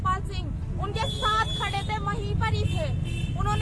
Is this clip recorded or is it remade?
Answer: recorded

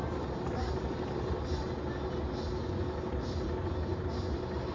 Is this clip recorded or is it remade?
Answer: recorded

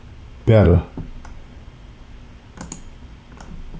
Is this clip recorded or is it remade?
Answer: recorded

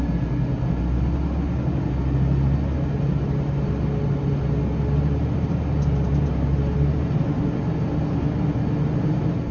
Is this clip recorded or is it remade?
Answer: recorded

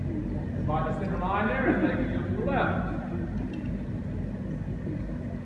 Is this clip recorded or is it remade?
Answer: recorded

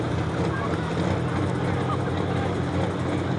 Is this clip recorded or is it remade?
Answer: recorded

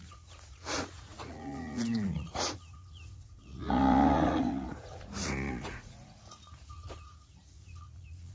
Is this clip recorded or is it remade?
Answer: remade